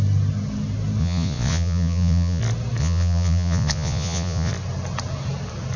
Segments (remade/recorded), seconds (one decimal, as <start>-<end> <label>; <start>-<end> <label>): 0.0-1.0 recorded; 1.0-2.4 remade; 2.4-2.8 recorded; 2.8-4.5 remade; 4.5-5.8 recorded